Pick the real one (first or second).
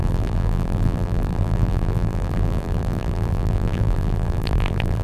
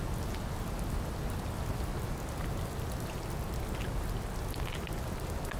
second